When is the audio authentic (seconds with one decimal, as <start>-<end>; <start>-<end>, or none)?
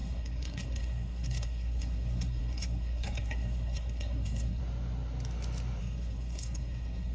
4.6-5.8